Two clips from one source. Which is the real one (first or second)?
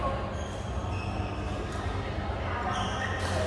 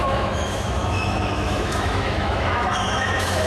first